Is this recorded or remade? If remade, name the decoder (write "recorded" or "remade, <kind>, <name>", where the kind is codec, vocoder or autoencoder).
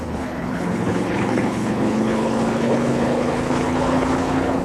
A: remade, codec, HILCodec